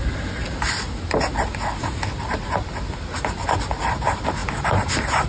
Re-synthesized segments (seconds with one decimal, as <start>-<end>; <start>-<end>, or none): none